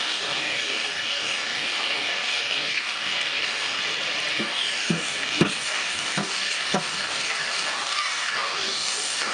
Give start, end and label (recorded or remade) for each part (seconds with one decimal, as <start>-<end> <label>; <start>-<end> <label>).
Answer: 0.0-3.8 remade; 3.8-4.3 recorded; 4.3-9.3 remade